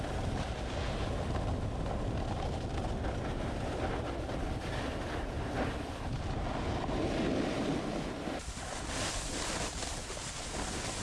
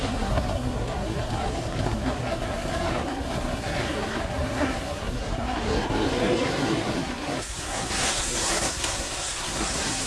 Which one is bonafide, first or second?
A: first